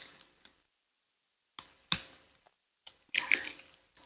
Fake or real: real